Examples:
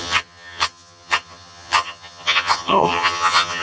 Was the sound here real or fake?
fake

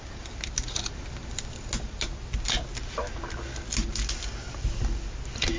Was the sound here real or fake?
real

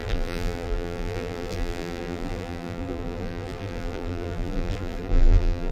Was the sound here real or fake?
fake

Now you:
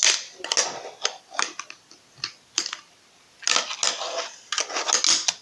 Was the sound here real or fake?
real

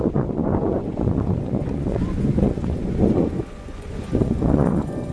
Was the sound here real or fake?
fake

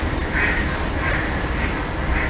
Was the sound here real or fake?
real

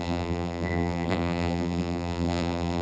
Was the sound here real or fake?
fake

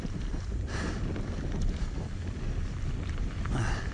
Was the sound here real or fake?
fake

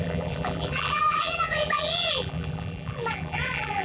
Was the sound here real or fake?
fake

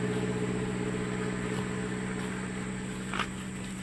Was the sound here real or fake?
real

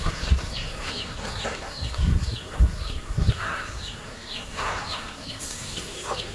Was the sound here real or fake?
fake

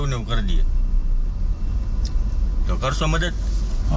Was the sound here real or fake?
real